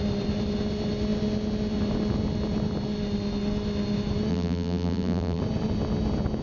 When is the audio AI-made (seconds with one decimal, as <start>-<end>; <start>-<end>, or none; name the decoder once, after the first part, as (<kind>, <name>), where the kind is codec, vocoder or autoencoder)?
4.3-5.4 (vocoder, BigVGAN v2)